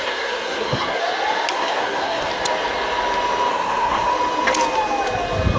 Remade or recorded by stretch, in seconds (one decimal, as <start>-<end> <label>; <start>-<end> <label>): 0.0-1.0 remade; 1.0-1.5 recorded; 1.5-2.3 remade; 2.3-3.5 recorded; 3.5-4.1 remade; 4.1-5.6 recorded